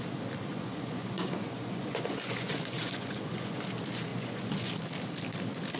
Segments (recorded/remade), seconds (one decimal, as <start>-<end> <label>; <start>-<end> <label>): 0.0-0.5 recorded; 0.5-3.6 remade; 3.6-4.1 recorded; 4.1-4.7 remade; 4.7-5.8 recorded